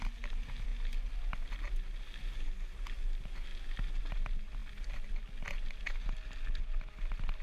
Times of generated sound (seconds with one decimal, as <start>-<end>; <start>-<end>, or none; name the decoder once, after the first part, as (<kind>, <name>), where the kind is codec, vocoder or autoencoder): none